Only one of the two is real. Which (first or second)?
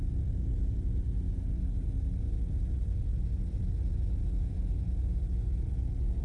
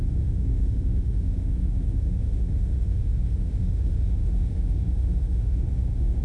first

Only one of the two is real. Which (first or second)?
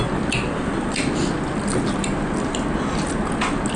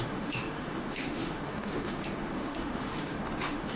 first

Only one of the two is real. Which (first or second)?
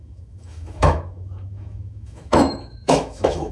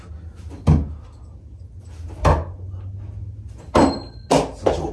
second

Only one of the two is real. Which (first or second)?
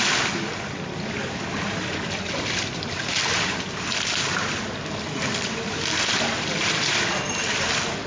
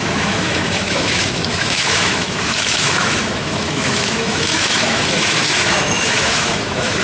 first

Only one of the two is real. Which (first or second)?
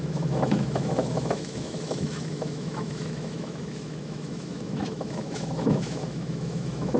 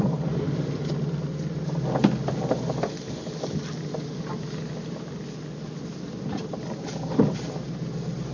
second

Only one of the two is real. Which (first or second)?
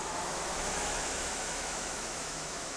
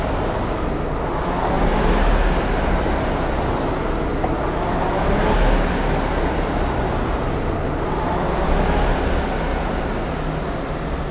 second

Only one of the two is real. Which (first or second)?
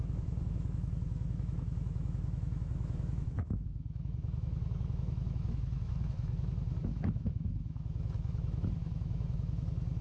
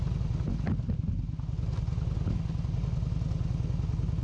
second